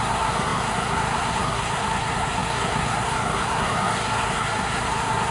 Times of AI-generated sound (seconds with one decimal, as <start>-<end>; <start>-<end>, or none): 0.0-5.3